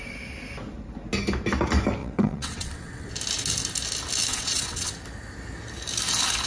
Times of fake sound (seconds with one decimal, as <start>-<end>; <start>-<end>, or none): 2.0-3.1; 4.3-4.9